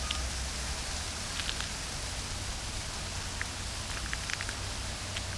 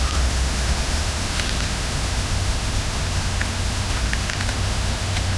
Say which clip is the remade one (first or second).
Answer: second